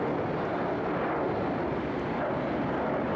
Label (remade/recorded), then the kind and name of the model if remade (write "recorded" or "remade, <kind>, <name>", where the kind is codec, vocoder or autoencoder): recorded